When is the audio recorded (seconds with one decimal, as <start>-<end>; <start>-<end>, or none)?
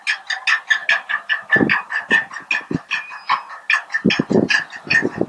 0.0-5.3